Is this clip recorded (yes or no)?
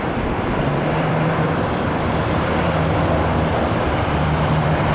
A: no